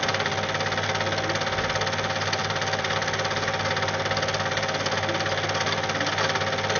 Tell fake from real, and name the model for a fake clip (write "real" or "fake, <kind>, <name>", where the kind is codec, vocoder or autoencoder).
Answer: real